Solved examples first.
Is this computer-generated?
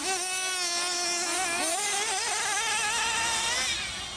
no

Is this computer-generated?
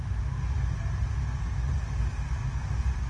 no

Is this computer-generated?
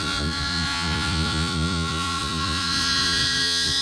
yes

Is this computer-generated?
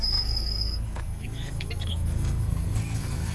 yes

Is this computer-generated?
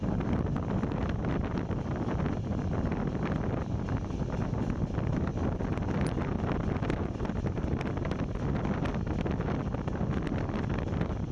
no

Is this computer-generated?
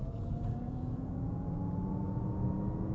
yes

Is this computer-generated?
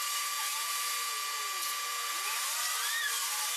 no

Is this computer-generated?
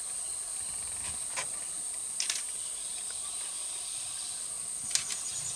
no